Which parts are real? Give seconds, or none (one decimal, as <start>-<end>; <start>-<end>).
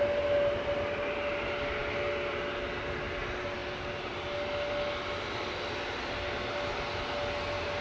0.0-7.8